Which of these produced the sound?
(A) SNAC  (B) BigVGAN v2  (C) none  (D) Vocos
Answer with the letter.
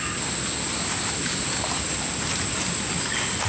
C